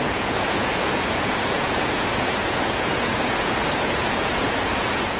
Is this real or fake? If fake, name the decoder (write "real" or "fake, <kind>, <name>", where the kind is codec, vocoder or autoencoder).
fake, vocoder, Vocos